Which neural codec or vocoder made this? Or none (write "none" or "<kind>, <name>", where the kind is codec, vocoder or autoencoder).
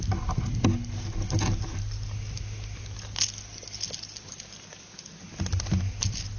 none